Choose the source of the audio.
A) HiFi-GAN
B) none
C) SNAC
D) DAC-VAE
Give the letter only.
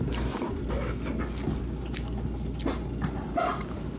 B